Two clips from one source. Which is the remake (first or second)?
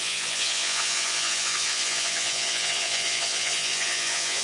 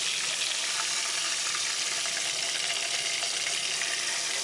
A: first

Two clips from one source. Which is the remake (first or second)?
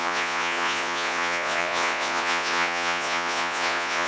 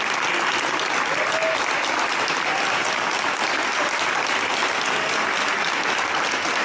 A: first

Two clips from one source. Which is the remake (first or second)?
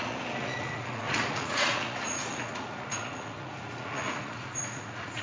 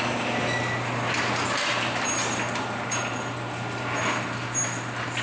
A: first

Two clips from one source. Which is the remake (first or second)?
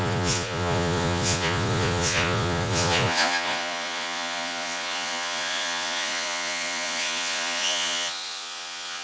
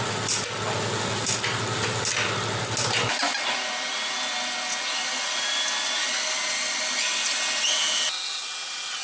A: first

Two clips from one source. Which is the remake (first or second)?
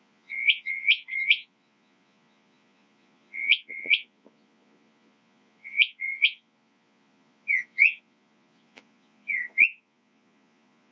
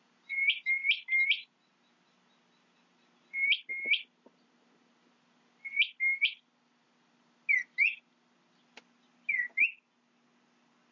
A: first